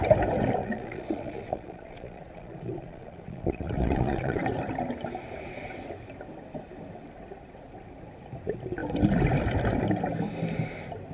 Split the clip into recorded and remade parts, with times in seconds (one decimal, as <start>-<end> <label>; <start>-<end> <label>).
0.0-0.6 recorded; 0.6-4.4 remade; 4.4-11.1 recorded